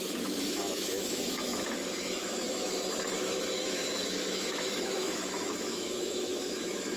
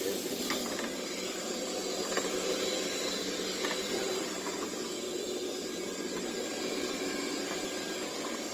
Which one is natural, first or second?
second